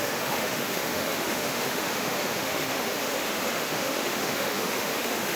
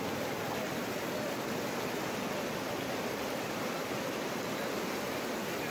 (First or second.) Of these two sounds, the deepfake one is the first